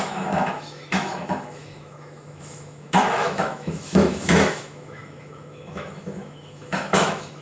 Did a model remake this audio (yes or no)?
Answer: yes